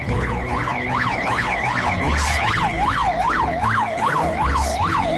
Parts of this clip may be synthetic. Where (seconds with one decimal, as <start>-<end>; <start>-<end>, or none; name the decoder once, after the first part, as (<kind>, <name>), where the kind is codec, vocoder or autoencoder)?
0.0-5.2 (codec, HILCodec)

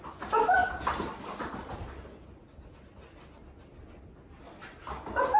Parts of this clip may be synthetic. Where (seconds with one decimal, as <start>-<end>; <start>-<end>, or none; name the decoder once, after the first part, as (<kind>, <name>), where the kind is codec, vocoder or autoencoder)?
none

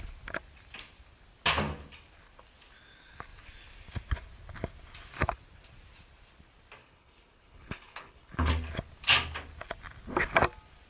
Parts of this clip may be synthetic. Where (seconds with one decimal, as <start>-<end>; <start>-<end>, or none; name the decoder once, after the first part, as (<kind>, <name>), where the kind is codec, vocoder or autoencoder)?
6.8-8.5 (codec, HILCodec)

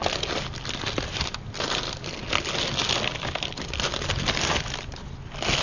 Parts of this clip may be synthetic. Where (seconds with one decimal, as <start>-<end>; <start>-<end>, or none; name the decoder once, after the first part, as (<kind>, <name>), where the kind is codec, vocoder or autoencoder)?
none

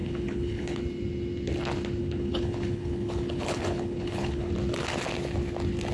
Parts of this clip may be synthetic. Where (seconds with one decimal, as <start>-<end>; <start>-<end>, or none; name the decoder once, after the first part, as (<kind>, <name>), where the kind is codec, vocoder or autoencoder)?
0.0-0.8 (codec, HILCodec); 2.0-4.5

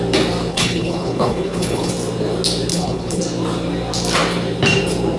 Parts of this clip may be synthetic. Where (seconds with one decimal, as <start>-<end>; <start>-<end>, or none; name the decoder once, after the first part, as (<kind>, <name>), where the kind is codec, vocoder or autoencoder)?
0.5-1.9 (codec, HILCodec); 2.7-3.2